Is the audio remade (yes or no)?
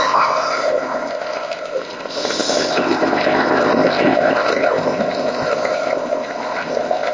yes